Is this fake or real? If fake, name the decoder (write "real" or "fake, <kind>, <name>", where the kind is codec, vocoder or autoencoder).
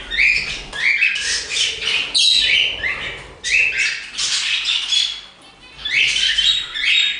real